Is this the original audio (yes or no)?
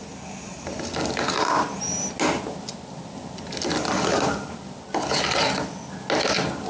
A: yes